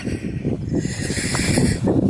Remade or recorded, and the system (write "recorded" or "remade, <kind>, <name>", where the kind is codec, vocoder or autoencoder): remade, vocoder, BigVGAN v2